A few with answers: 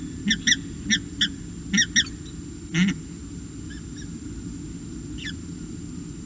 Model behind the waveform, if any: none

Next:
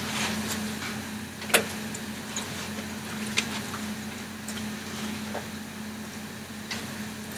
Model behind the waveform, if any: none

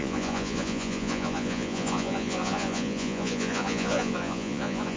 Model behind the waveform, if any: vocoder, Vocos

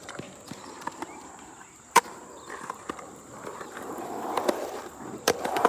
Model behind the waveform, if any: vocoder, BigVGAN v2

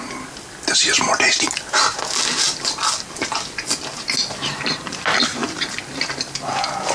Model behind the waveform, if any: none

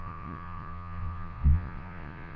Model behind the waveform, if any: vocoder, Vocos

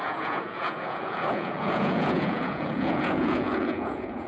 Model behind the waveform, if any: vocoder, Vocos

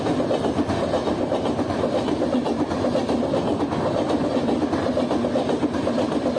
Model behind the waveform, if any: none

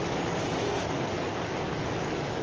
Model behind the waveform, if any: codec, DAC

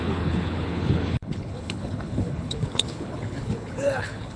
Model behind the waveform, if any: codec, HILCodec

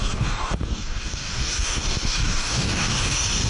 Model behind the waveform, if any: codec, DAC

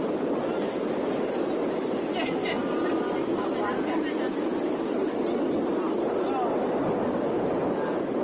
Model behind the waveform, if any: none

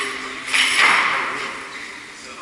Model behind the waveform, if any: none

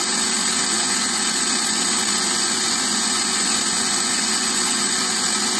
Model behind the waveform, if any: vocoder, Vocos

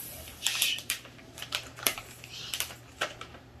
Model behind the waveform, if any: vocoder, BigVGAN v2